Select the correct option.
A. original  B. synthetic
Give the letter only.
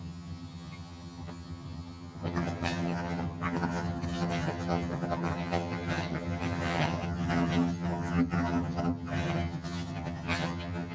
B